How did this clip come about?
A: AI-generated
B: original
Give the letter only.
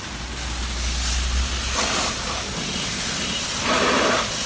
B